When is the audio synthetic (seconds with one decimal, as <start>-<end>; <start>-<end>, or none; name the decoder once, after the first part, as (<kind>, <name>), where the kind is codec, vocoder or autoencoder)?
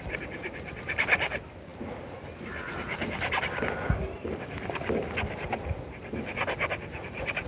none